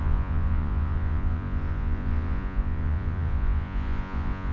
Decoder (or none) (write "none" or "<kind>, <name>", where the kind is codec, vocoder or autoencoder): vocoder, Vocos